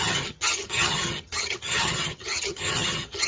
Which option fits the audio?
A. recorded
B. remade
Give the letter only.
B